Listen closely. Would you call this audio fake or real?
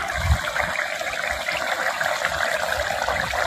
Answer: real